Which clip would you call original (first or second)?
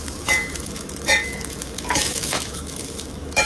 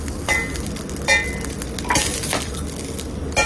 second